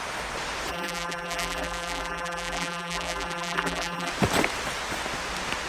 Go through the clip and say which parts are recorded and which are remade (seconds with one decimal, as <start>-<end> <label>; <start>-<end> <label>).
0.0-0.7 recorded; 0.7-4.1 remade; 4.1-5.7 recorded